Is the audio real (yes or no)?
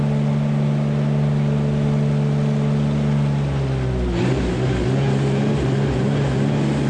yes